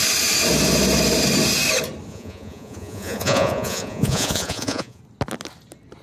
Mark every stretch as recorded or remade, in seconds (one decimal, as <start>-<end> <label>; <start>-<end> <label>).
0.0-2.1 recorded; 2.1-5.0 remade; 5.0-6.0 recorded